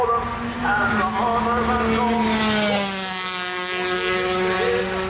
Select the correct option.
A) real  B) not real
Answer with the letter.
A